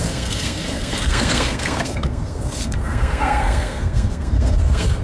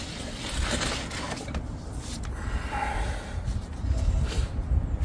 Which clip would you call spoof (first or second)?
first